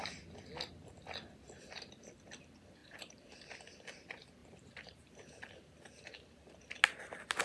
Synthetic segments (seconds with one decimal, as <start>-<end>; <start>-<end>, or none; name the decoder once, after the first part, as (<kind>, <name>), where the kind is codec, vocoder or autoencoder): 2.8-3.4 (vocoder, BigVGAN v2); 4.4-6.6